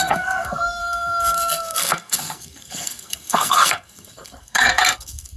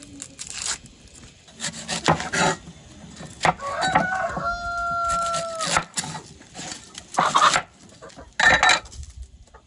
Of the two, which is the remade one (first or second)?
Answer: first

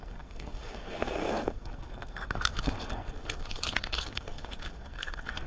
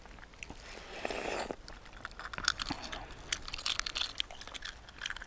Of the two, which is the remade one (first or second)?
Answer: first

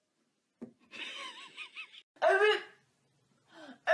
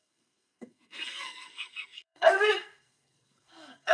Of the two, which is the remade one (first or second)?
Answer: second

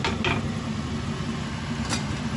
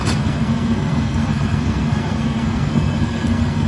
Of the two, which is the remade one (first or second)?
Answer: second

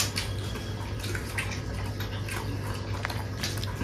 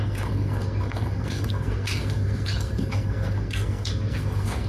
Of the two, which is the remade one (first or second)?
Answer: second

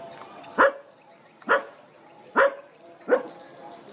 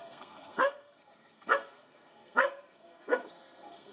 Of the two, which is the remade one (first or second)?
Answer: second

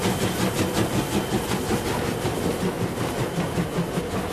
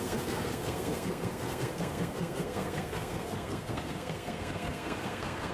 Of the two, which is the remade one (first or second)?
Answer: second